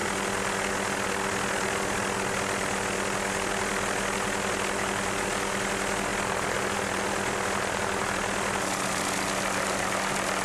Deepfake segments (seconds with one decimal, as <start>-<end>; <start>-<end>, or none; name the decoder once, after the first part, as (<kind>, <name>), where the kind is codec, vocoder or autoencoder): none